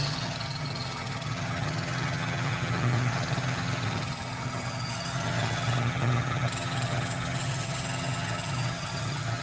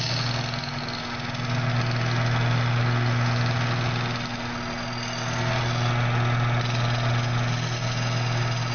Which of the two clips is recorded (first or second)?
second